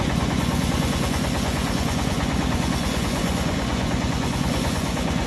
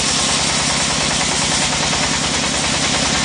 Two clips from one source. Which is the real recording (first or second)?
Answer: second